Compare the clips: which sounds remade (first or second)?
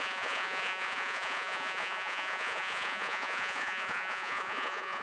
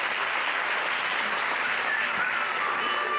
first